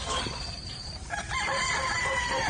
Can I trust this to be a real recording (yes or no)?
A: no